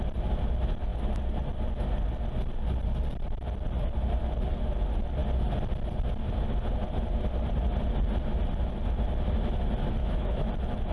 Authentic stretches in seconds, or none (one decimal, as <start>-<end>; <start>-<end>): 0.0-10.0; 10.5-10.9